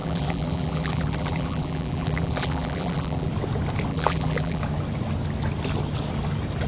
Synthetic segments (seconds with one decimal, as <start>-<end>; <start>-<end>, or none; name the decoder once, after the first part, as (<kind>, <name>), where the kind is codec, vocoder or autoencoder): 0.0-3.3 (vocoder, BigVGAN v2); 3.9-4.6